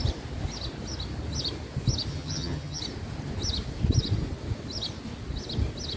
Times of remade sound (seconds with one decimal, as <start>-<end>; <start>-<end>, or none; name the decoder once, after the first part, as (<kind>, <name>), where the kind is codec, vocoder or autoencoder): 2.1-2.8 (vocoder, HiFi-GAN)